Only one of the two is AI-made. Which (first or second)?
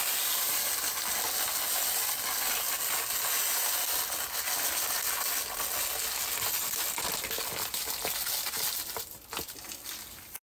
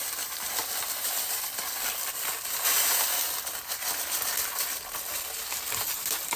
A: second